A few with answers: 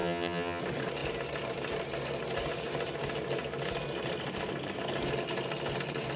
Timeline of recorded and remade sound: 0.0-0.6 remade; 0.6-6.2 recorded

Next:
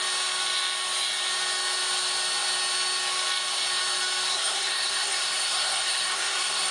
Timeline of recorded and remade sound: 0.0-4.3 recorded; 4.3-6.7 remade

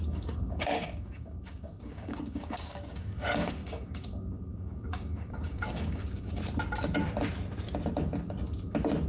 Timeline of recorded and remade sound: 0.0-6.4 remade; 6.4-9.1 recorded

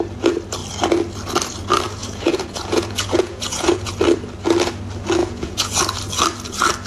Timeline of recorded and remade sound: 0.0-2.0 recorded; 2.0-3.9 remade; 3.9-5.2 recorded; 5.2-5.8 remade; 5.8-6.9 recorded

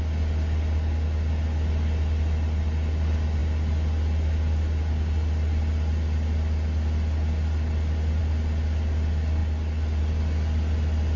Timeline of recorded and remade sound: 0.0-11.2 recorded

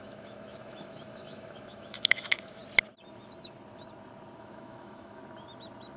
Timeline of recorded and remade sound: 0.0-2.6 remade; 2.6-4.4 recorded; 4.4-5.2 remade; 5.2-6.0 recorded

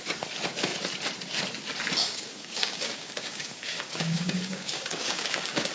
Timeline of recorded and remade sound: 0.0-2.0 recorded; 2.0-5.7 remade